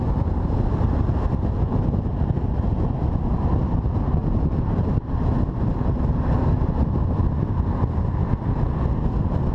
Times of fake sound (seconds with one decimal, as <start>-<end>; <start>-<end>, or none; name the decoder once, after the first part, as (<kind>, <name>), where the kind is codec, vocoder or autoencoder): 4.2-5.0 (vocoder, BigVGAN v2)